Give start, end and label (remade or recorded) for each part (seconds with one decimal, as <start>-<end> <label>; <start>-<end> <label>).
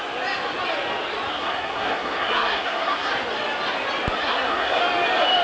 0.0-1.3 recorded; 1.3-3.1 remade; 3.1-4.2 recorded; 4.2-4.8 remade; 4.8-5.4 recorded